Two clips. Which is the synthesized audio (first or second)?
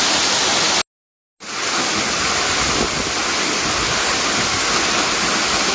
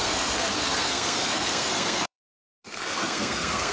second